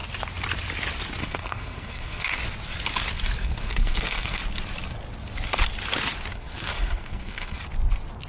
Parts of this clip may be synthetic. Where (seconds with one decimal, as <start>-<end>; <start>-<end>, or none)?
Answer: 1.2-2.4; 3.4-4.4; 6.3-7.6